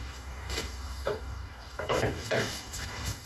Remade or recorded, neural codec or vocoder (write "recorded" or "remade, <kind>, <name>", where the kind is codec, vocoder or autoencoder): remade, codec, DAC